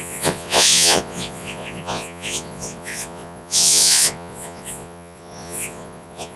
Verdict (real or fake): fake